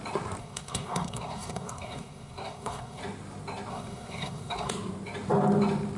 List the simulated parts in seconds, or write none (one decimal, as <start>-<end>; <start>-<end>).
0.4-3.0; 3.7-4.7

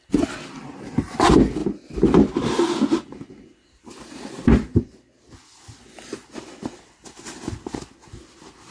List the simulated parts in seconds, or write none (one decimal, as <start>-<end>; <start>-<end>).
none